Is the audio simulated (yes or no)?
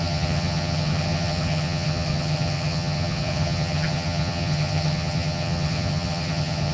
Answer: yes